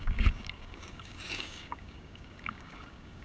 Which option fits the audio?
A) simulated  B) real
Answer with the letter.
A